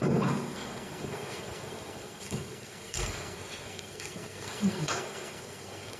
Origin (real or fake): fake